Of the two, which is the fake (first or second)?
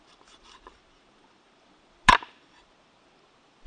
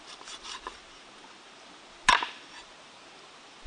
first